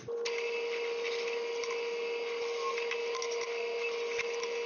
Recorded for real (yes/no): yes